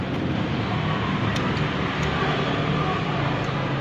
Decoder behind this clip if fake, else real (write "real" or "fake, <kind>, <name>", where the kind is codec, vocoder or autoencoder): real